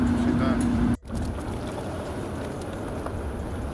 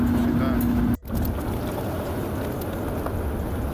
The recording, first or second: second